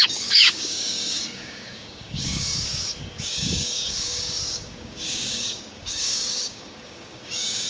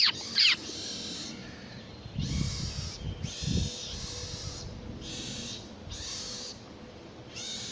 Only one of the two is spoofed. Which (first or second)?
first